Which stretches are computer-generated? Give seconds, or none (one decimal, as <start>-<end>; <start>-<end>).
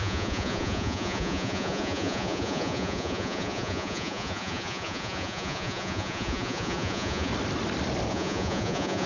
0.0-7.3; 8.1-9.1